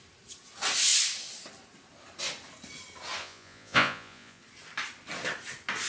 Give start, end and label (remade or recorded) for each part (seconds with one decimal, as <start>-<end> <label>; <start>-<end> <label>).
0.0-3.2 recorded; 3.2-4.4 remade; 4.4-5.9 recorded